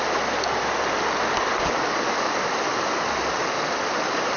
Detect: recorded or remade recorded